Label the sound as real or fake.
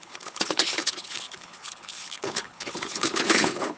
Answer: fake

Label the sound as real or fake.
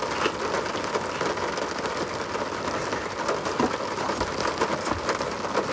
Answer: real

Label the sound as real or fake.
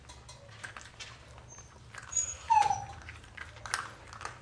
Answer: real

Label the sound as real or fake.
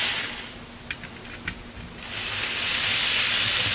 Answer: real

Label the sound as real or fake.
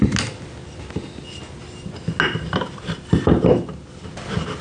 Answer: real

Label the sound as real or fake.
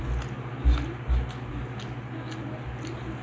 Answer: real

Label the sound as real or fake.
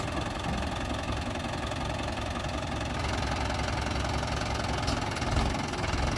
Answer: real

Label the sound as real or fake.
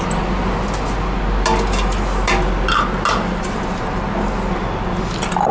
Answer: real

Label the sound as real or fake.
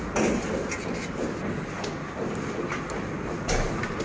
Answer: real